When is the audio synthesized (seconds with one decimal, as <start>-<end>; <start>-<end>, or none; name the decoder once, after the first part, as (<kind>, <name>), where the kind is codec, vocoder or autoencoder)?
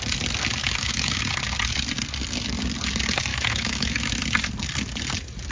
0.6-1.2 (autoencoder, DAC-VAE); 3.3-4.2